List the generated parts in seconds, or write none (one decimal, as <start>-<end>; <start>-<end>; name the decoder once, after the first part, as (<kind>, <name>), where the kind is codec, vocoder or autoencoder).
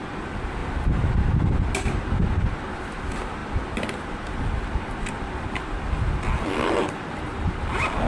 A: none